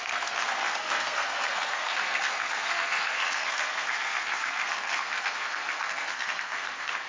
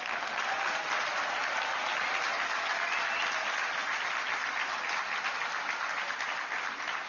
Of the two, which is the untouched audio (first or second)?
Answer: second